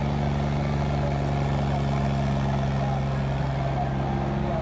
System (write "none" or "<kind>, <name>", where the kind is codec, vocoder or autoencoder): none